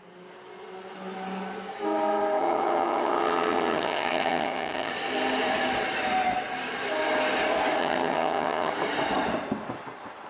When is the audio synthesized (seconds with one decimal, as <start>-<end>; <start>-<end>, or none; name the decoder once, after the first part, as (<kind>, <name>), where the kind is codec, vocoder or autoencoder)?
2.4-4.9 (vocoder, HiFi-GAN); 7.8-8.7